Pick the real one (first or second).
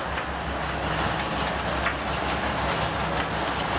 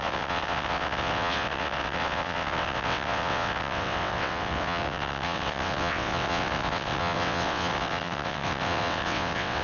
first